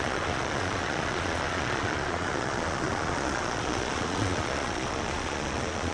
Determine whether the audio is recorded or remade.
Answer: remade